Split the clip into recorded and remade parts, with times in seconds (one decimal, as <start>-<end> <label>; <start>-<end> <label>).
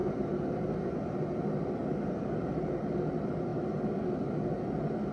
0.0-1.4 remade; 1.4-1.8 recorded; 1.8-2.5 remade; 2.5-5.1 recorded